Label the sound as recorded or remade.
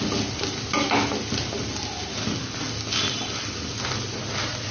recorded